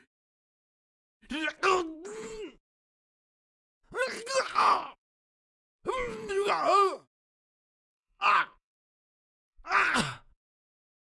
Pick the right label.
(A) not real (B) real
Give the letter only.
A